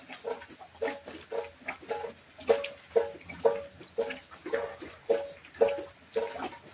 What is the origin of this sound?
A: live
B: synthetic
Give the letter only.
A